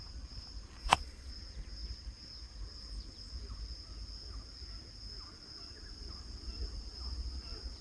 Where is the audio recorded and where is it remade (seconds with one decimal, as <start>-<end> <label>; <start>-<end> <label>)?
0.0-0.8 recorded; 0.8-1.3 remade; 1.3-7.8 recorded